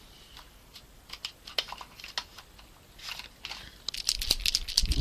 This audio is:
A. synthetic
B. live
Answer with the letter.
B